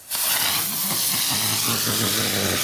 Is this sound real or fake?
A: real